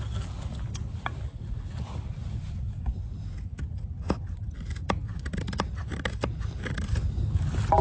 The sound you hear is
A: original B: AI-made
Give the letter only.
A